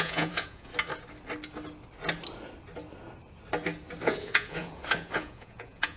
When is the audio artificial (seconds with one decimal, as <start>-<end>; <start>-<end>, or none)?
0.0-0.7; 4.0-6.0